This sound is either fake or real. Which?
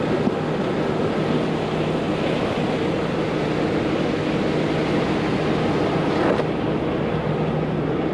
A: real